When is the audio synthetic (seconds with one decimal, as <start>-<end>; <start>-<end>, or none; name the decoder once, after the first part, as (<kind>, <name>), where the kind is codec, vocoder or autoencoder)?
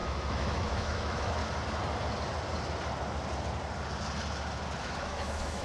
0.0-1.4 (autoencoder, DAC-VAE); 4.8-5.6